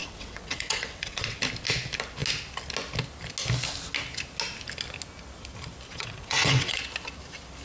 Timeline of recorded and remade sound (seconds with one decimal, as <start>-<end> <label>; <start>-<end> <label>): 0.0-1.4 remade; 1.4-5.9 recorded; 5.9-6.8 remade; 6.8-7.6 recorded